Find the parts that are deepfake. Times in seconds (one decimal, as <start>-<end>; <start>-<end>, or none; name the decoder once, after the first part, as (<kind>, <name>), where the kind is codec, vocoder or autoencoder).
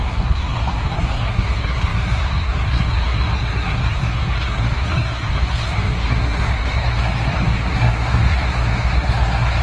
0.0-9.6 (codec, SNAC)